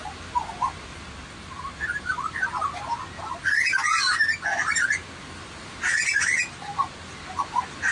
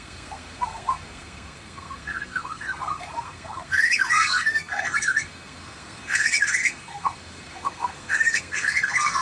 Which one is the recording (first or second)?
first